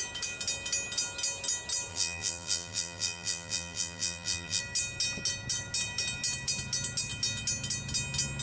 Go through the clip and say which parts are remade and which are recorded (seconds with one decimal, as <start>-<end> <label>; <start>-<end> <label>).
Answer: 0.0-1.9 recorded; 1.9-4.6 remade; 4.6-8.4 recorded